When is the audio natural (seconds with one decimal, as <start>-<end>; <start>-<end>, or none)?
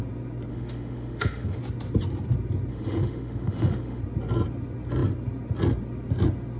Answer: 0.0-0.5; 1.6-2.7; 4.0-6.6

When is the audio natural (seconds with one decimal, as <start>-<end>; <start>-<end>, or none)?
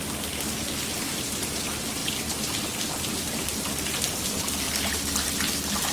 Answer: 0.0-5.9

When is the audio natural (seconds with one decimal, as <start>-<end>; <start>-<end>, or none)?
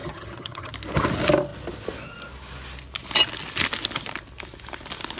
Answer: 0.7-5.2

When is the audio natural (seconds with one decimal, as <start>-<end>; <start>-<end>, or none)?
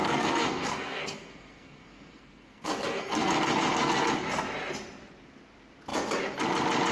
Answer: 4.1-6.9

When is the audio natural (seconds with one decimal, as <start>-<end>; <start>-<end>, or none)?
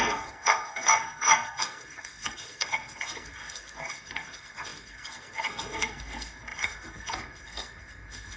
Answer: none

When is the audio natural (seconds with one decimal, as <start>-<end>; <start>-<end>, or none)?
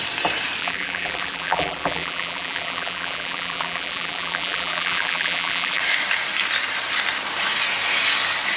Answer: 0.0-0.6; 5.8-8.6